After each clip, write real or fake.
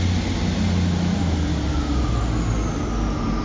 real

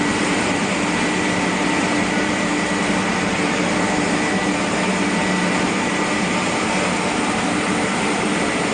fake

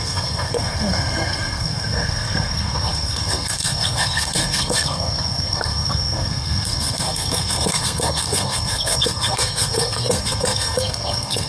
fake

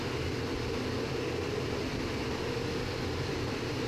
real